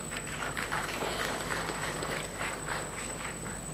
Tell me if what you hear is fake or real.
fake